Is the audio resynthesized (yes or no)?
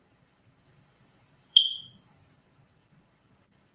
yes